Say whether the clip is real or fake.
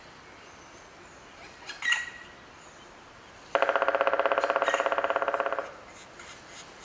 real